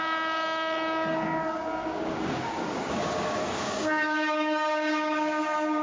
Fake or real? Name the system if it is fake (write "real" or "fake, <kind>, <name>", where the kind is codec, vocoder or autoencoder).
fake, codec, DAC